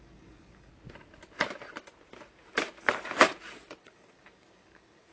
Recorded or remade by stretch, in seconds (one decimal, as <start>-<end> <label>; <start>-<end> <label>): 0.0-0.7 remade; 0.7-3.8 recorded; 3.8-5.1 remade